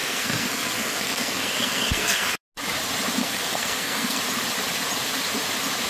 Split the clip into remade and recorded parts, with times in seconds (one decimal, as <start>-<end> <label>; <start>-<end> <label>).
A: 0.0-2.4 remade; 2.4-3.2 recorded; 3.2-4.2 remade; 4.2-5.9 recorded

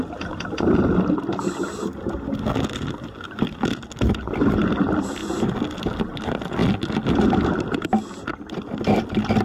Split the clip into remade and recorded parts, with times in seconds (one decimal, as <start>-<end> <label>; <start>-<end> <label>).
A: 0.0-9.4 recorded

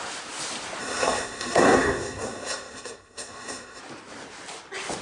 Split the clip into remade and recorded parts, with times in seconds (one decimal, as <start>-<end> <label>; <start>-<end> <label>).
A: 0.0-0.8 recorded; 0.8-3.8 remade; 3.8-5.0 recorded

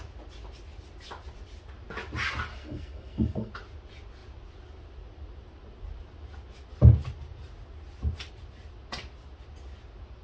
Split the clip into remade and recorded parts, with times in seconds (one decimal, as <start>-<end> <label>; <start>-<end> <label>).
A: 0.0-2.5 recorded; 2.5-3.5 remade; 3.5-10.2 recorded

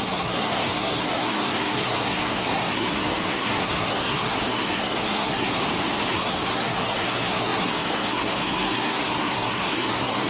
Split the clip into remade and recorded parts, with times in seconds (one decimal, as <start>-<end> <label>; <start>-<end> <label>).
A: 0.0-5.6 remade; 5.6-6.1 recorded; 6.1-10.3 remade